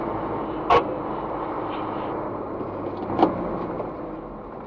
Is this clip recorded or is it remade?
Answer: recorded